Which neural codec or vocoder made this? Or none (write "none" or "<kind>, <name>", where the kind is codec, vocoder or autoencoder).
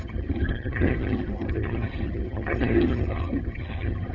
vocoder, HiFi-GAN